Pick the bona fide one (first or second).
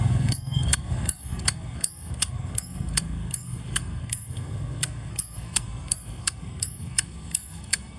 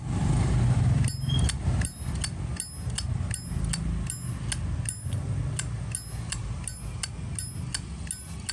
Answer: second